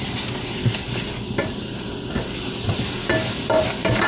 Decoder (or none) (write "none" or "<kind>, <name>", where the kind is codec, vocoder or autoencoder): vocoder, BigVGAN v2